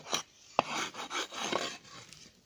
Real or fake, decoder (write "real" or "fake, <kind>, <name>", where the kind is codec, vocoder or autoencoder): real